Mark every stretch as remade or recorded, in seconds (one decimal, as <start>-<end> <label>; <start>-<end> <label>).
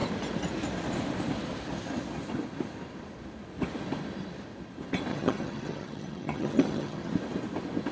0.0-5.1 recorded; 5.1-7.1 remade; 7.1-7.9 recorded